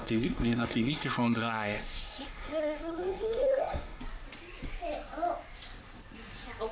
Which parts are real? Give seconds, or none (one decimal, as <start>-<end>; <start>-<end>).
4.0-6.7